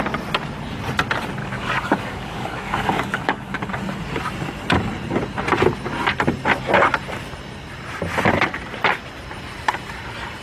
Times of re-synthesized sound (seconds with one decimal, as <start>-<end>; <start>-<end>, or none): 1.4-3.6